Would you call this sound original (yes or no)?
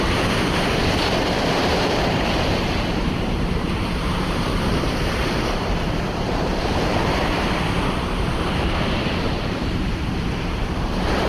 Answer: no